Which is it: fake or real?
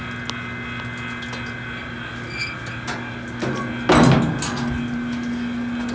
real